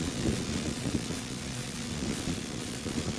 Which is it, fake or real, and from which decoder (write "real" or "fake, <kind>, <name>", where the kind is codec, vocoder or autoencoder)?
fake, vocoder, Vocos